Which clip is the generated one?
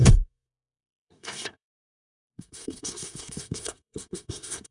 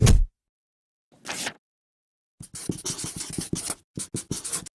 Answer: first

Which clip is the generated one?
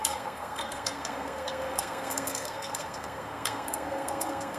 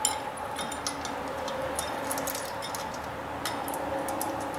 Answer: first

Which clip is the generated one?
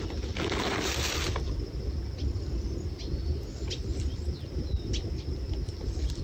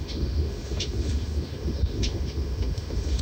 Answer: second